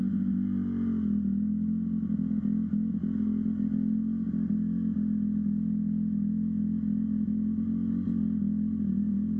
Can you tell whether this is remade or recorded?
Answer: recorded